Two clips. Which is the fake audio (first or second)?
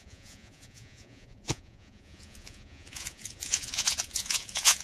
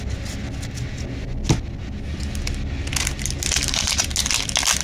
first